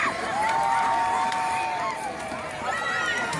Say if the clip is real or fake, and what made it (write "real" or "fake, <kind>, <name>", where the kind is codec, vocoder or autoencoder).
fake, vocoder, BigVGAN v2